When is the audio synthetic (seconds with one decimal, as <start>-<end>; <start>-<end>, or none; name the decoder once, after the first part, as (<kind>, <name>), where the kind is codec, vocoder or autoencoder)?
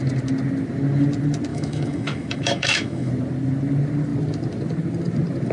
1.5-3.1 (autoencoder, DAC-VAE)